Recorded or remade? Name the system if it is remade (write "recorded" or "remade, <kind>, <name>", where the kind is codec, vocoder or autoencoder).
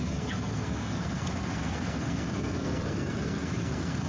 remade, codec, SNAC